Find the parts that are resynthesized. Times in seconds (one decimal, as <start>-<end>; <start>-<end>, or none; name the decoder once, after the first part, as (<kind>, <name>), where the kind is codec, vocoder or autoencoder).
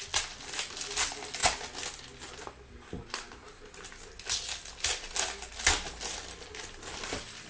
none